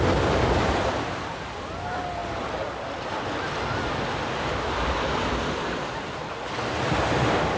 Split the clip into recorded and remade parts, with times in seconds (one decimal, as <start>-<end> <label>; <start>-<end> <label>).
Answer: 0.0-7.6 recorded